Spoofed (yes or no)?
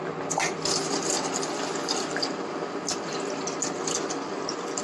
no